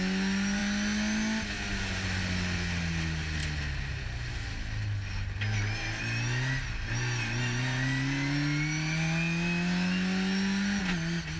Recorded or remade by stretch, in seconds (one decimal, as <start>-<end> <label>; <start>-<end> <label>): 0.0-11.4 recorded